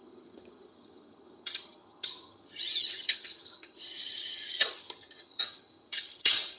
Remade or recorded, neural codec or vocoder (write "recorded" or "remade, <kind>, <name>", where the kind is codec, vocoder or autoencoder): remade, vocoder, HiFi-GAN